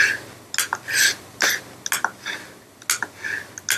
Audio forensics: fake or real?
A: real